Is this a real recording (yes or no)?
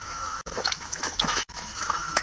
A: no